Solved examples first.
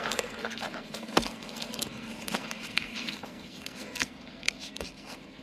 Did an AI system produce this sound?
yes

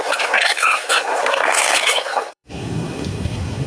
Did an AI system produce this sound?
yes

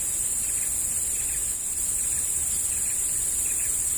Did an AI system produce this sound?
no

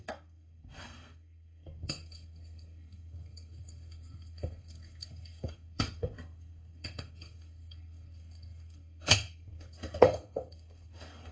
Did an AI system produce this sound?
yes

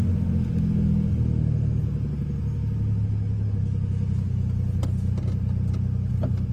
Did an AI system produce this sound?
no